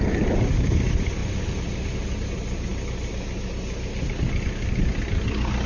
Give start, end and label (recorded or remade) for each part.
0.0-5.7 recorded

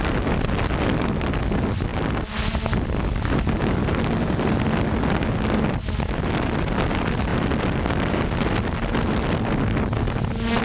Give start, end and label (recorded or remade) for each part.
0.0-10.6 recorded

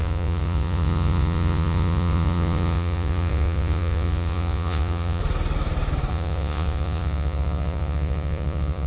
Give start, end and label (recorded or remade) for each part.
0.0-5.2 remade; 5.2-6.1 recorded; 6.1-8.9 remade

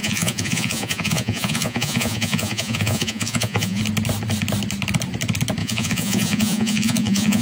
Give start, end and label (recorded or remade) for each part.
0.0-3.8 remade; 3.8-5.6 recorded; 5.6-7.4 remade

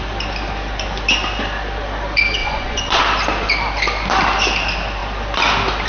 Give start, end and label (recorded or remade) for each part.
0.0-2.4 recorded; 2.4-3.0 remade; 3.0-5.9 recorded

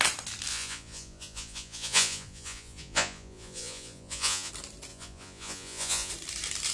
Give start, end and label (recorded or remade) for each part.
0.0-0.5 recorded; 0.5-4.5 remade; 4.5-4.9 recorded; 4.9-6.1 remade; 6.1-6.7 recorded

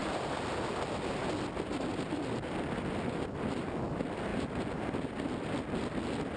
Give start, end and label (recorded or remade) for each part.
0.0-6.4 recorded

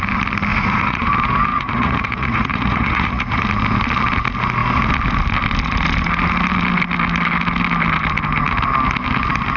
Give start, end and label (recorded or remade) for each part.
0.0-0.5 recorded; 0.5-1.1 remade; 1.1-1.5 recorded; 1.5-3.4 remade; 3.4-9.6 recorded